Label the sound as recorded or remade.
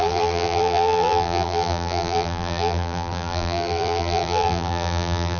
remade